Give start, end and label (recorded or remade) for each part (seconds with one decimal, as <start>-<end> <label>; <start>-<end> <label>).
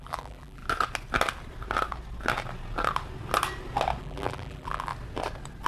0.0-0.6 remade; 0.6-4.0 recorded; 4.0-4.9 remade; 4.9-5.7 recorded